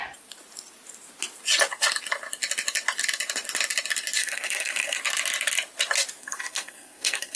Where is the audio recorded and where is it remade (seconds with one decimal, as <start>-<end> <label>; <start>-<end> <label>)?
0.0-4.2 recorded; 4.2-5.0 remade; 5.0-6.2 recorded; 6.2-7.4 remade